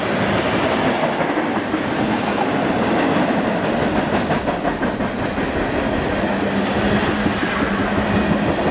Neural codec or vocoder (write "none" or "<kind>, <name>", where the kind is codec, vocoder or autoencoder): none